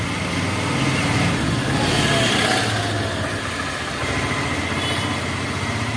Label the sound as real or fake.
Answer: real